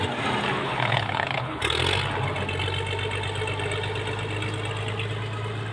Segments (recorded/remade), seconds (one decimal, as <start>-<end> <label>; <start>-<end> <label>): 0.0-0.6 recorded; 0.6-1.6 remade; 1.6-5.7 recorded